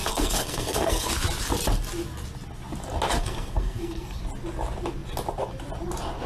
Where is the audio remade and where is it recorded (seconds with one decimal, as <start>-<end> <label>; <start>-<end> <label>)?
0.0-1.1 remade; 1.1-3.2 recorded; 3.2-4.2 remade; 4.2-6.3 recorded